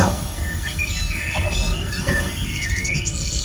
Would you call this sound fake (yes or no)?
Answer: yes